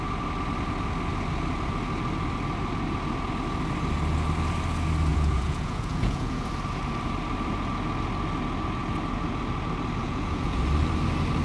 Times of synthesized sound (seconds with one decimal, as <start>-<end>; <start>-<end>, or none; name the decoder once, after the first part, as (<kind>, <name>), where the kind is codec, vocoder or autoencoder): 5.1-6.5 (vocoder, Vocos); 10.0-10.6